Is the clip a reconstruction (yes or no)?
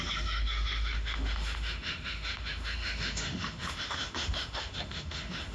yes